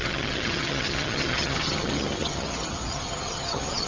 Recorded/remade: remade